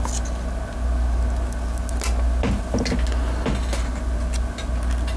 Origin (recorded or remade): recorded